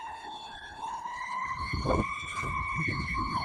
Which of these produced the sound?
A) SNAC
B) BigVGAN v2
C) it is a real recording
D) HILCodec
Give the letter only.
D